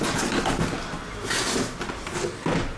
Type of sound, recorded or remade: recorded